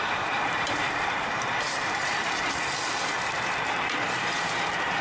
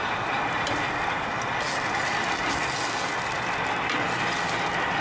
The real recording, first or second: second